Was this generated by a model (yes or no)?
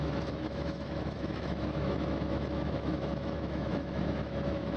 yes